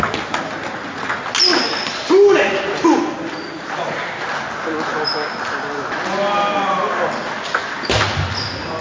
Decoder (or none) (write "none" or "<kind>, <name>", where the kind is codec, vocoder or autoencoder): none